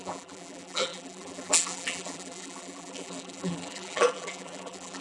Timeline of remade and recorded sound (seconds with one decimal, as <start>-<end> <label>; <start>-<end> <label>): 0.0-5.0 remade